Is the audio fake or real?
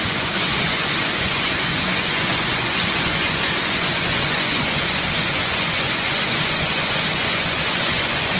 fake